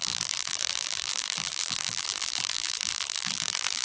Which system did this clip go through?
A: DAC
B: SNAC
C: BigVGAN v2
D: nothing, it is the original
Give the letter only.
C